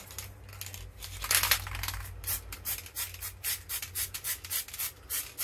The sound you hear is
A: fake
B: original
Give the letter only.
B